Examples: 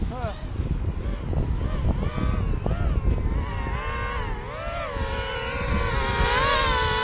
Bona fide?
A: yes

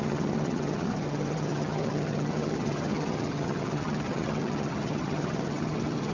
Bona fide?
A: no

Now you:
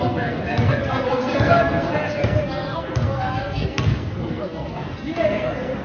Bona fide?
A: no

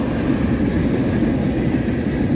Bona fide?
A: yes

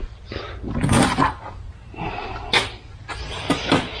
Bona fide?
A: yes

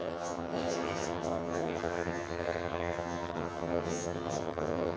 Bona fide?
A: no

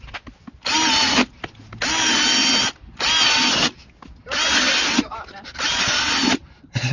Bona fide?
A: yes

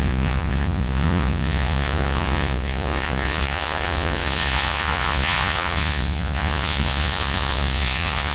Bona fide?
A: no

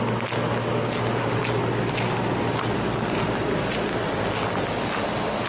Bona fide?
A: yes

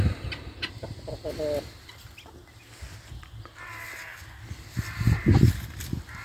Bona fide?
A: yes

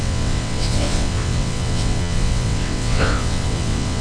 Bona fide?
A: no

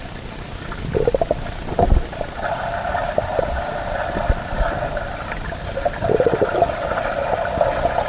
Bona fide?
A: yes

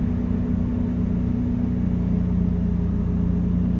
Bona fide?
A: yes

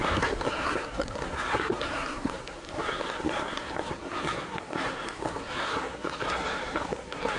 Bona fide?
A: no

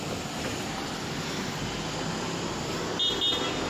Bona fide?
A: yes